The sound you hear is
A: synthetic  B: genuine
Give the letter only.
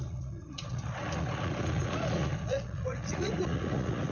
A